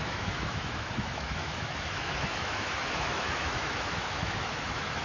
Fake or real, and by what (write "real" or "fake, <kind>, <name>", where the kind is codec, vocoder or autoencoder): fake, autoencoder, DAC-VAE